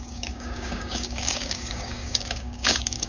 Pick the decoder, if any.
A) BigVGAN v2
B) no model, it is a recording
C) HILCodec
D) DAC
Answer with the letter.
D